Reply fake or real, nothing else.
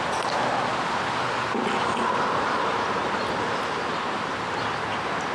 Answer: real